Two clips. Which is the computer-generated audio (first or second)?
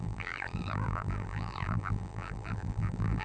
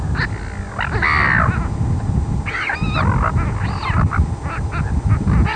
first